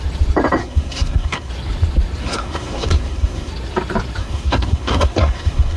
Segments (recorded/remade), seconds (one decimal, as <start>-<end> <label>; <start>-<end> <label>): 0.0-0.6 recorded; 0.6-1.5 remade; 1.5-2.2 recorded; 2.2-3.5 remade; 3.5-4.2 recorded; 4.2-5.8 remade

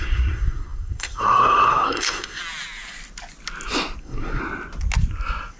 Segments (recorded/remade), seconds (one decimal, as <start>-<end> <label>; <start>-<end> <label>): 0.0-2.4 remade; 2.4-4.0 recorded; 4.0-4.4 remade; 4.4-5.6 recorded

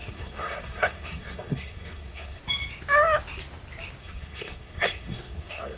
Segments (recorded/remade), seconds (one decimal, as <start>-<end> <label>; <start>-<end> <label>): 0.0-2.4 remade; 2.4-4.0 recorded; 4.0-5.8 remade

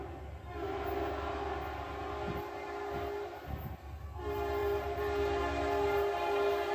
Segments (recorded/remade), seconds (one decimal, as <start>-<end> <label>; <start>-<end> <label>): 0.0-6.7 recorded